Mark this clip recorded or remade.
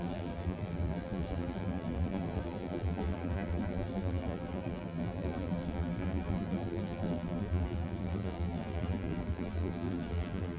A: remade